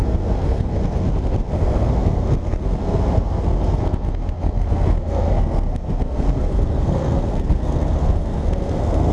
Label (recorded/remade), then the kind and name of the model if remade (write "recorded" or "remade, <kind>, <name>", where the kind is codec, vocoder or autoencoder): remade, codec, SNAC